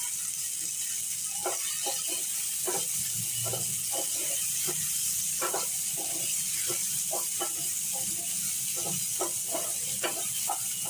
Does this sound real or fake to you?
real